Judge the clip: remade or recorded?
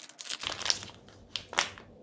recorded